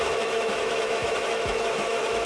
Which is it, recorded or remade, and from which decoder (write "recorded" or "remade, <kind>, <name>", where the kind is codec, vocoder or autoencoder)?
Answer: remade, autoencoder, DAC-VAE